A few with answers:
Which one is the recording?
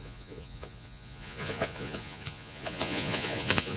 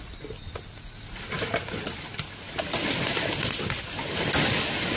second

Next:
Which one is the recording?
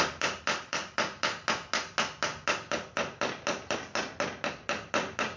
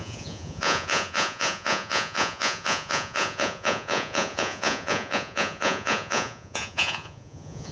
first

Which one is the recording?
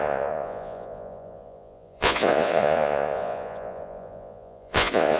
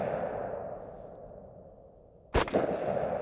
second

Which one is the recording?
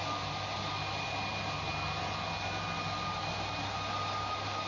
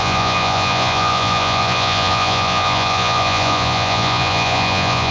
first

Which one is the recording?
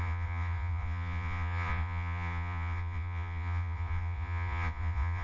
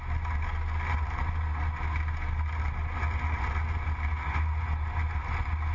second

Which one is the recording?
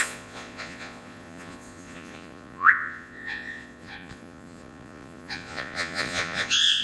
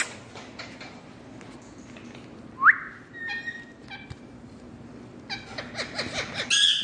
second